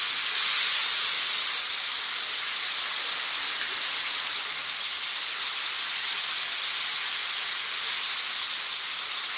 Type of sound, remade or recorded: recorded